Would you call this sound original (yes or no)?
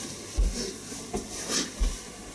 yes